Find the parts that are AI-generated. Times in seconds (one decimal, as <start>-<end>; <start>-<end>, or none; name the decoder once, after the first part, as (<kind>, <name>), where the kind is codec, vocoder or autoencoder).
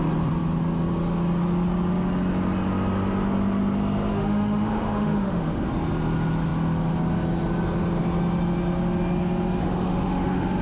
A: 4.1-5.7 (autoencoder, DAC-VAE); 9.6-10.6